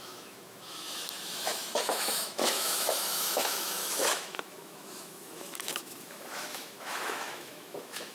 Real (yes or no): no